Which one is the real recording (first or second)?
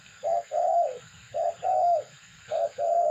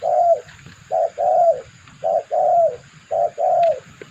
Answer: second